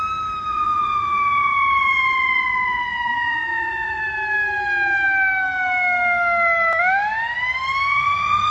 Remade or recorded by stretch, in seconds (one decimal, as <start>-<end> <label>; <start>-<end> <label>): 0.0-0.5 recorded; 0.5-4.0 remade; 4.0-7.9 recorded; 7.9-8.5 remade